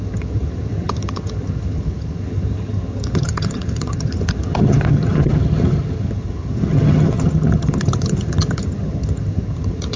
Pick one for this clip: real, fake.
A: fake